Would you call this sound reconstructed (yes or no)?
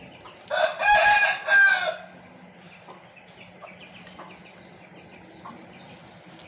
no